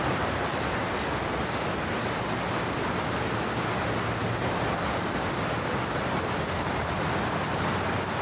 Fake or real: real